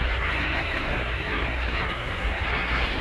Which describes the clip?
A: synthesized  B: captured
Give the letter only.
A